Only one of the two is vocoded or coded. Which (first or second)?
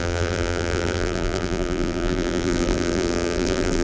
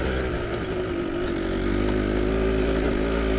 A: first